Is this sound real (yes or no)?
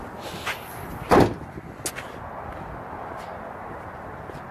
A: yes